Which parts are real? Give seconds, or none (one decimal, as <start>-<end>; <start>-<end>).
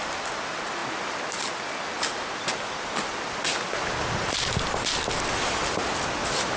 0.0-6.6